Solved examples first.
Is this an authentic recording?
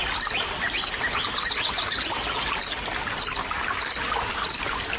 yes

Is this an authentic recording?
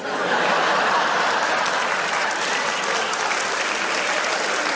yes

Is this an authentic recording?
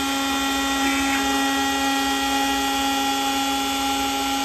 yes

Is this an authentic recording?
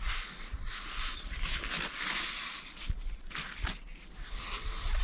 yes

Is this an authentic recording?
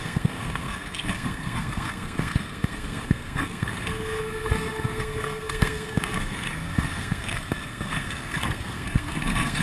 no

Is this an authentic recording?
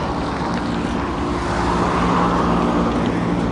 yes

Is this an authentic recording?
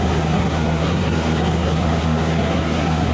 no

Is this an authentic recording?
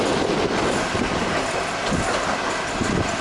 yes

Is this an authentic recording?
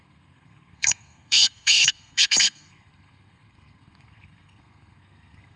no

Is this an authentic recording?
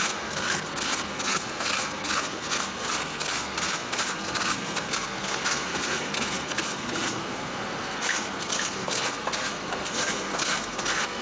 no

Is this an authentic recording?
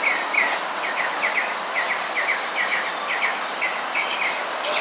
yes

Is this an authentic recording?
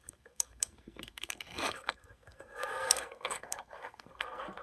no